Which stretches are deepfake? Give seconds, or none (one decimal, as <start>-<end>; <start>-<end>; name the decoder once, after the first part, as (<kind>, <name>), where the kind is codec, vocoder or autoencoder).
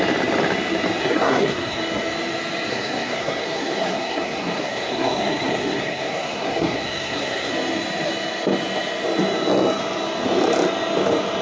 1.0-1.8 (codec, SNAC); 2.7-7.5